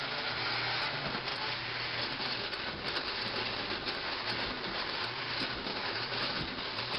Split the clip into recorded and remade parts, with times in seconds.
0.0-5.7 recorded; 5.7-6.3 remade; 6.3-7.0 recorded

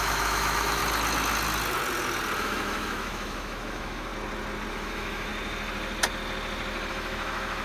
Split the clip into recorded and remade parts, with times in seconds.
0.0-0.8 remade; 0.8-2.4 recorded; 2.4-4.1 remade; 4.1-4.7 recorded; 4.7-5.3 remade; 5.3-6.9 recorded; 6.9-7.6 remade

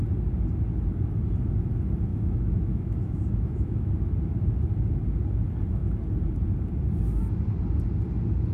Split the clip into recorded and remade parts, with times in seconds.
0.0-2.1 recorded; 2.1-3.9 remade; 3.9-8.5 recorded

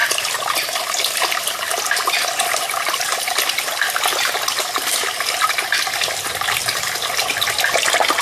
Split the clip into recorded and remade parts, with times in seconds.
0.0-8.2 recorded